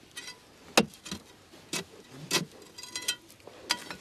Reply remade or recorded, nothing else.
recorded